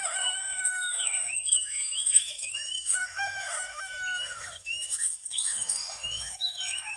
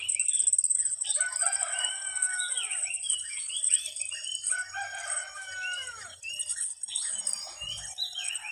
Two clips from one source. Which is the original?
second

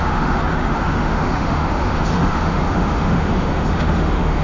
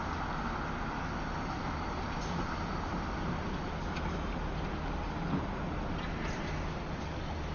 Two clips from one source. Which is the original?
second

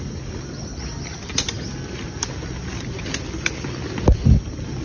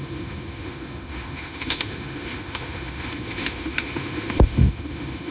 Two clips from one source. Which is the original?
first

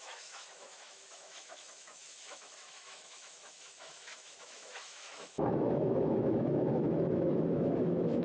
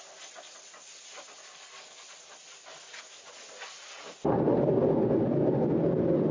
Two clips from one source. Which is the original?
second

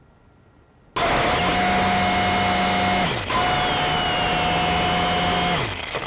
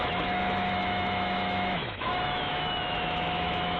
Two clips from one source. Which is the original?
first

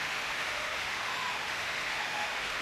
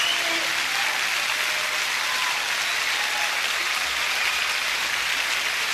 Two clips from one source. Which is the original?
second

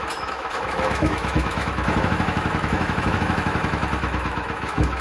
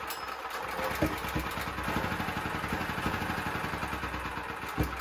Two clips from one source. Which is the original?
second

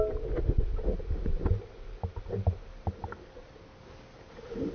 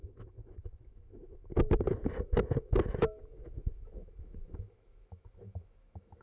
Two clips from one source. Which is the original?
first